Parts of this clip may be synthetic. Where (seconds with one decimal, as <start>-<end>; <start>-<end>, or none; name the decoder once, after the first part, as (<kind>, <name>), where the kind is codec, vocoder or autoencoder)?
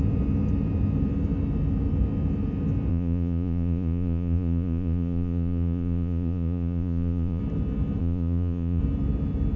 2.9-7.4 (vocoder, Vocos); 8.0-8.8